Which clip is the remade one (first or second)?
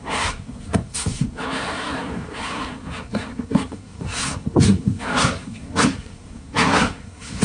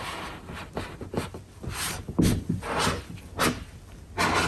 first